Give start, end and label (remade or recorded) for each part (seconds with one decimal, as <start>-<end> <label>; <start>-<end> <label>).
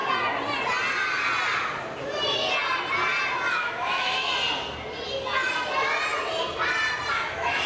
0.0-3.5 recorded; 3.5-4.3 remade; 4.3-7.1 recorded; 7.1-7.7 remade